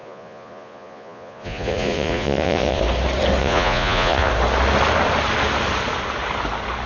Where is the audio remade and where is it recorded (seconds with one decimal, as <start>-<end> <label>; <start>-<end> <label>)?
0.0-2.8 remade; 2.8-3.4 recorded; 3.4-4.3 remade; 4.3-6.9 recorded